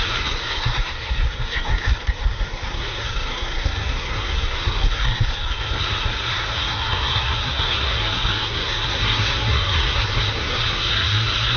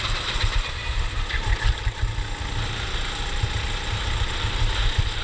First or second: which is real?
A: second